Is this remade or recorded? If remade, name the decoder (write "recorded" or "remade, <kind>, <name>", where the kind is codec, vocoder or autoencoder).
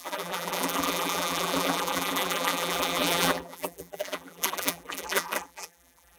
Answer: remade, vocoder, BigVGAN v2